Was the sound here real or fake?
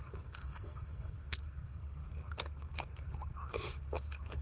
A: fake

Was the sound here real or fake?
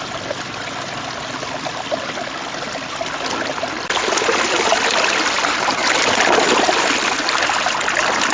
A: real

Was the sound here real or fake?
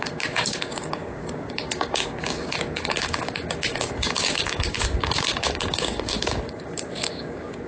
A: fake